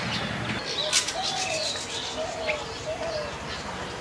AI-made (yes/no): no